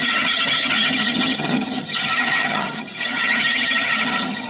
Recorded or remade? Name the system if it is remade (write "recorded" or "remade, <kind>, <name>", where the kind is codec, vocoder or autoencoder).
remade, vocoder, HiFi-GAN